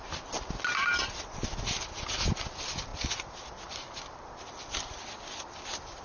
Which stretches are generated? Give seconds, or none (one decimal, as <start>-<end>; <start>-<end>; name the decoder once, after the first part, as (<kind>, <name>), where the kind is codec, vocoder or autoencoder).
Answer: none